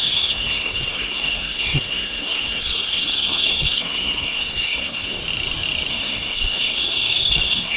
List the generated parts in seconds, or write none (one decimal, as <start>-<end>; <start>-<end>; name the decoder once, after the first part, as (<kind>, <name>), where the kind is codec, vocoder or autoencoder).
0.0-5.2 (codec, SNAC); 5.9-7.8